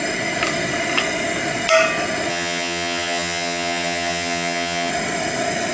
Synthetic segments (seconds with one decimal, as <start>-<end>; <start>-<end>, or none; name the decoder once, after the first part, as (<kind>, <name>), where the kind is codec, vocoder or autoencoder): 2.3-4.9 (vocoder, HiFi-GAN)